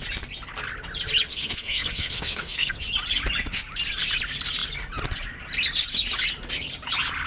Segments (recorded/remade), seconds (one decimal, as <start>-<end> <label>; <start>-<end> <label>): 0.0-1.3 recorded; 1.3-2.8 remade; 2.8-7.3 recorded